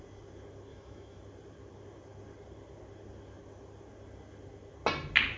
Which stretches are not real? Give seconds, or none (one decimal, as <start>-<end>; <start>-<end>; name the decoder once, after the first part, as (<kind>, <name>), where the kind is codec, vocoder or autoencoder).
0.7-1.2 (autoencoder, DAC-VAE)